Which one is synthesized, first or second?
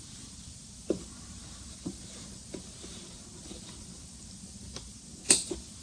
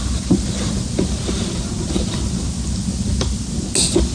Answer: first